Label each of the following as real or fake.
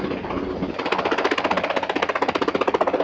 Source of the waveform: real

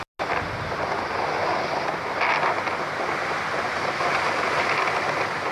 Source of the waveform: real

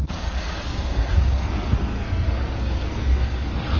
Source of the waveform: fake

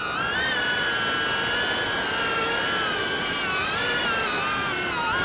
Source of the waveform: real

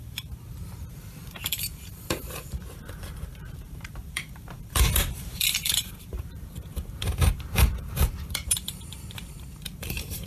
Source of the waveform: fake